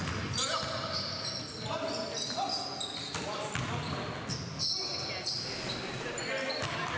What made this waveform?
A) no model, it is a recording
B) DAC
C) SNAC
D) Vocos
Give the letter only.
A